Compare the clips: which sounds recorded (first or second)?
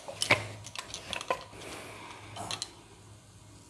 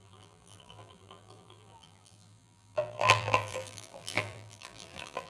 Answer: first